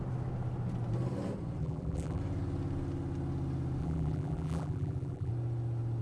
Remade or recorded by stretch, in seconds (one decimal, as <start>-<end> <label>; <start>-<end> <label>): 0.0-1.6 recorded; 1.6-2.2 remade; 2.2-3.8 recorded; 3.8-5.3 remade; 5.3-6.0 recorded